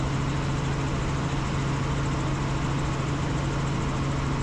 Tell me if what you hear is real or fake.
real